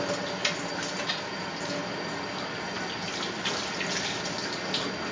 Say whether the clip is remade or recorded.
recorded